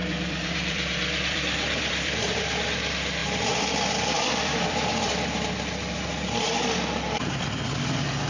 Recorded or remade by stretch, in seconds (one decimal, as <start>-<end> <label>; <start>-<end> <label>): 0.0-2.4 remade; 2.4-3.2 recorded; 3.2-5.1 remade; 5.1-8.3 recorded